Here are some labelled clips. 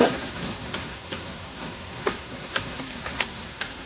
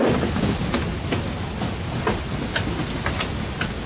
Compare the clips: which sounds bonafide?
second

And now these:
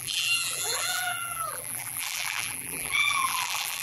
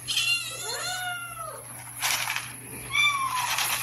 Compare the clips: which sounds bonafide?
second